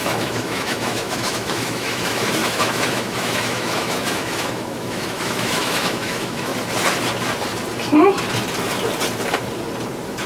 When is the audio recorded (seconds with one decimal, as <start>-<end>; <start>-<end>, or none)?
6.5-10.3